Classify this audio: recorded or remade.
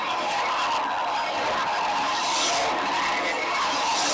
recorded